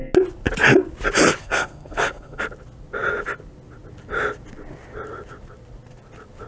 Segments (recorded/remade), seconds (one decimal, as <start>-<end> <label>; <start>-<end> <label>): 0.0-1.4 recorded; 1.4-2.4 remade; 2.4-6.5 recorded